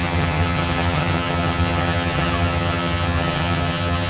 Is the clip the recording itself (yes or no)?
no